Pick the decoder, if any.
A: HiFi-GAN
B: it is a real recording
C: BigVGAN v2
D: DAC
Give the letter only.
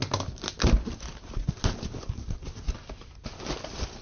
B